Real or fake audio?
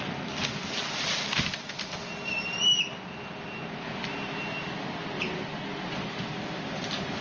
real